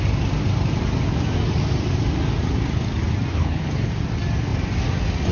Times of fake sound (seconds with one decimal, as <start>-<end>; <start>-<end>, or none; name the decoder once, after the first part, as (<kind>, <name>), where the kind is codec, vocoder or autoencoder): 3.3-3.9 (codec, HILCodec)